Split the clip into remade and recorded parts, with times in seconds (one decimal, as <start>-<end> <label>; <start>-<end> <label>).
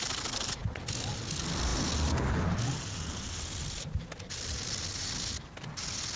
0.0-6.2 recorded